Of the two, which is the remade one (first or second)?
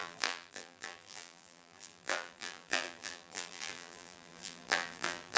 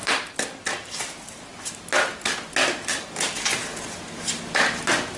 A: first